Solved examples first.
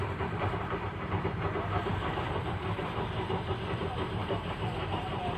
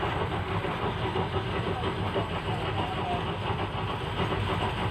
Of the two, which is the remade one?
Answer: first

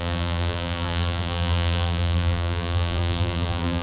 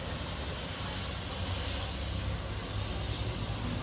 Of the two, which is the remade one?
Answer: first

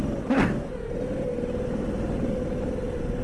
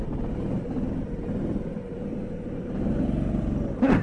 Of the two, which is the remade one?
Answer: second